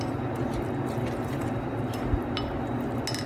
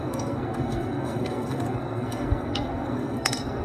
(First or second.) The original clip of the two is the first